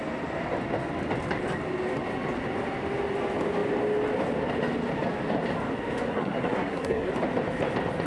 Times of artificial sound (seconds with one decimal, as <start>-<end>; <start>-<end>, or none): 6.1-7.1